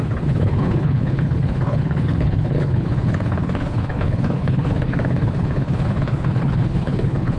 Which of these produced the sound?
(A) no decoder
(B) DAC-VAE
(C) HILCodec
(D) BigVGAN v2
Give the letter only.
C